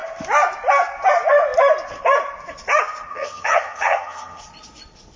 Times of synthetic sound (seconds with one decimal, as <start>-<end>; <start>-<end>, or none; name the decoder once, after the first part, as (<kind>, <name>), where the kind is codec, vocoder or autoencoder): 3.1-4.4 (vocoder, HiFi-GAN)